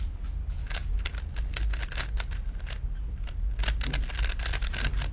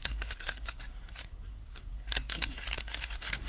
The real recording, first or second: first